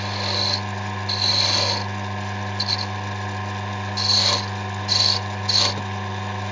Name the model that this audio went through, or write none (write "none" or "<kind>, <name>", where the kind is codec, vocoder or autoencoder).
none